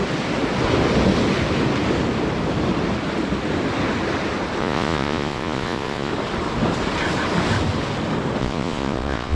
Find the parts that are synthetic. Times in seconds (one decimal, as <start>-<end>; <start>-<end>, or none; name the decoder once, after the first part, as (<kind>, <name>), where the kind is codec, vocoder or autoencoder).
4.6-6.1 (vocoder, Vocos); 8.4-9.4